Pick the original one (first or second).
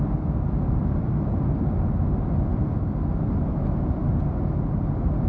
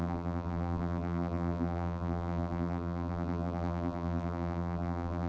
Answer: first